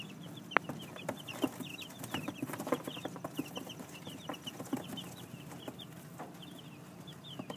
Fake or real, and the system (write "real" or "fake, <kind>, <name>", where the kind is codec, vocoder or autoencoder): real